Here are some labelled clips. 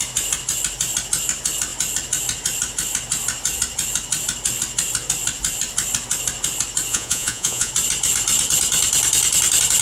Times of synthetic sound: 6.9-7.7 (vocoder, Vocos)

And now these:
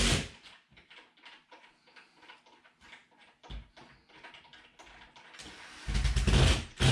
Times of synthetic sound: none

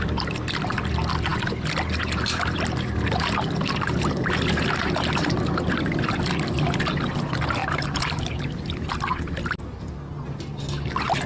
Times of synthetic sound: 7.6-8.3 (vocoder, BigVGAN v2)